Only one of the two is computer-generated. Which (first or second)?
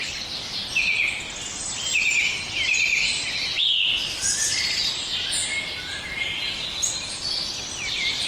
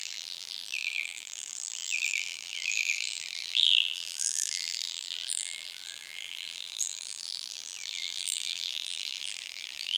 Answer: second